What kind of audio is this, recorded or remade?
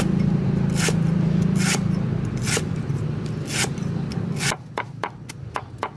recorded